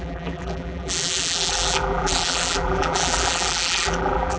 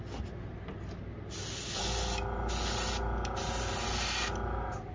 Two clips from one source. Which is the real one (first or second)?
second